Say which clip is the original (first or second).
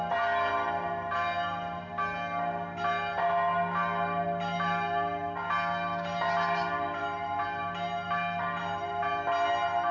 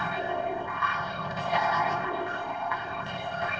first